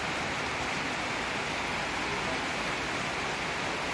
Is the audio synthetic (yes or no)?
no